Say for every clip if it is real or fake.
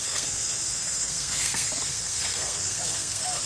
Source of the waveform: fake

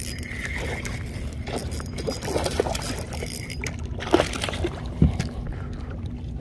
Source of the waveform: fake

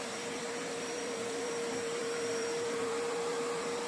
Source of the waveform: fake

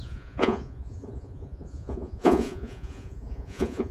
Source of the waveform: fake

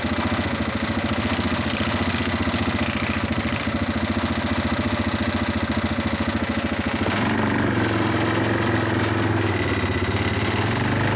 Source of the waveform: real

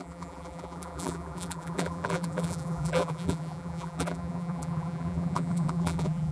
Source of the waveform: fake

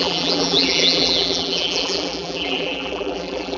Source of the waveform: fake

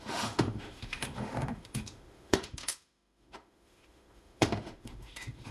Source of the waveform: fake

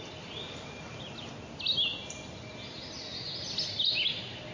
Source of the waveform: real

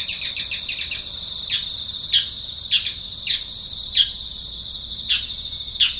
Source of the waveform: real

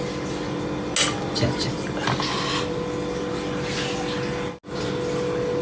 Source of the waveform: real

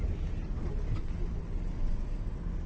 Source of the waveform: real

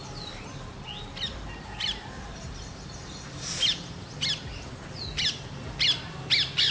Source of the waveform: real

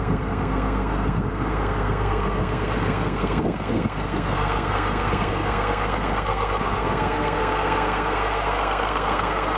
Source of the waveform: fake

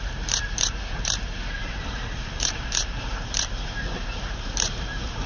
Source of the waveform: fake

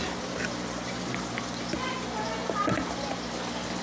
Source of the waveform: real